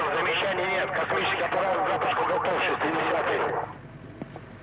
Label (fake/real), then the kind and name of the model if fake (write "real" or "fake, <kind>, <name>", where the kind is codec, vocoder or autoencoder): real